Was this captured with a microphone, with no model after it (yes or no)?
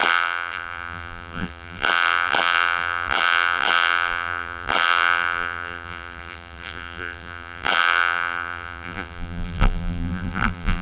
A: no